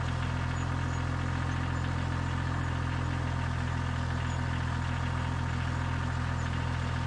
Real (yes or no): yes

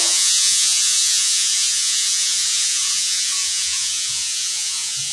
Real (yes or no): no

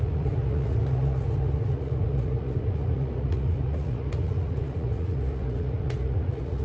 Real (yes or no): no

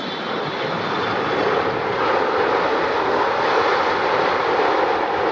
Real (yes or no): yes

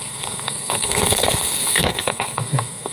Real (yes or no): no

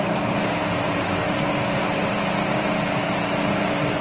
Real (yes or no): no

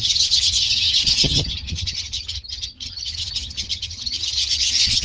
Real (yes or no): no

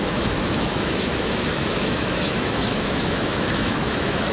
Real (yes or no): no